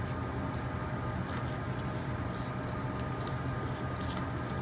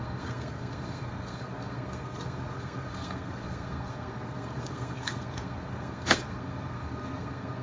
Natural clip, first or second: first